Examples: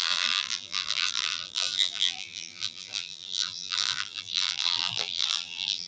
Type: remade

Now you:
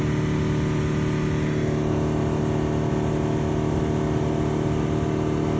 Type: recorded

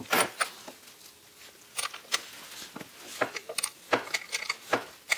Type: recorded